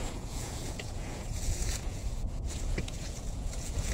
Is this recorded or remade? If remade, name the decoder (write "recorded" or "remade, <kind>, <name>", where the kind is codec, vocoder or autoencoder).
remade, vocoder, Vocos